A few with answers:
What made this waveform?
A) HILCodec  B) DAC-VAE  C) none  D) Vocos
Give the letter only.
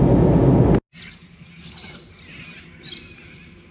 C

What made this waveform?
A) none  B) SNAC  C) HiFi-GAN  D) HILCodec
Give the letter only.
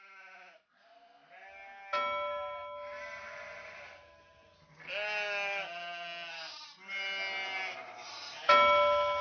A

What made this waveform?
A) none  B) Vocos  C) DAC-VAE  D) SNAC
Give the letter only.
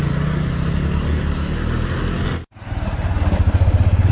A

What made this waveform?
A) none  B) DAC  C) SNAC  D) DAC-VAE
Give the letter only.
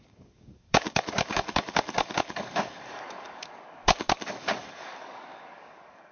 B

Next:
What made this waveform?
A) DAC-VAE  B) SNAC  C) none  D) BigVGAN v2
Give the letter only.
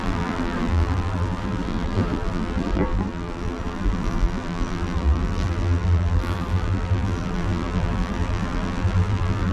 D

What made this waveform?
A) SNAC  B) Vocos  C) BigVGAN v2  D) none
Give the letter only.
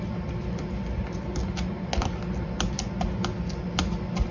D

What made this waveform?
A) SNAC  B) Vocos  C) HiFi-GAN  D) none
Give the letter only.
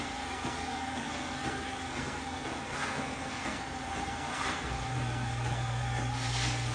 A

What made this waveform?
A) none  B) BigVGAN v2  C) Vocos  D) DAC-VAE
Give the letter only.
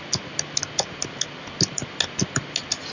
A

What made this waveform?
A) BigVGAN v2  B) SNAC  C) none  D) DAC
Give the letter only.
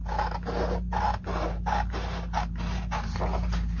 C